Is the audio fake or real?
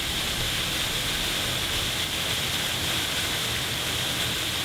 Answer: real